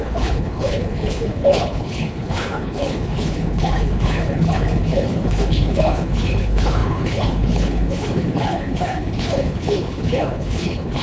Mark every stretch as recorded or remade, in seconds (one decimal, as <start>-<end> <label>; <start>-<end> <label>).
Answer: 0.0-11.0 remade